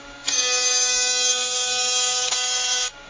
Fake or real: fake